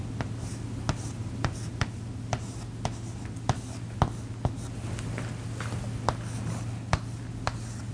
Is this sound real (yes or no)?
yes